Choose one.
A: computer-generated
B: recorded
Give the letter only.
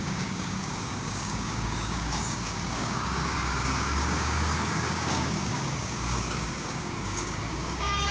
A